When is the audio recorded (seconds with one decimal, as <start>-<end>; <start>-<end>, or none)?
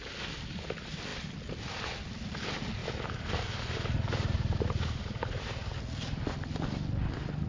0.0-2.8; 5.8-7.5